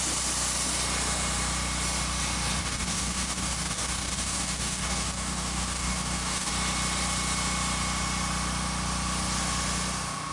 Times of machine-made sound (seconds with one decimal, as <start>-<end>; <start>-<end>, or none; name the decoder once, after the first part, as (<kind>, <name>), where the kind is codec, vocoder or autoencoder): 2.6-6.5 (codec, DAC)